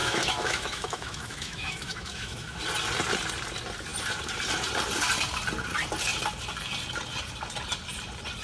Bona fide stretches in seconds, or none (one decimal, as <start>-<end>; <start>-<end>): 2.6-8.4